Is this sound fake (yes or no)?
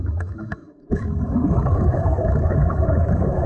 yes